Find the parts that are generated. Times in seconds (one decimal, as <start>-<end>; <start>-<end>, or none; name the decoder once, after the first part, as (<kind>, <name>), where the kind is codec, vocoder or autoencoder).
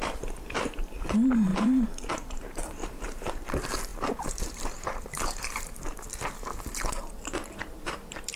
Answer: 0.0-8.4 (vocoder, BigVGAN v2)